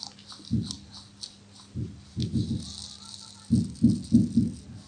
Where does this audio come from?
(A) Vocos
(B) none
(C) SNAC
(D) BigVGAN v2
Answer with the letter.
B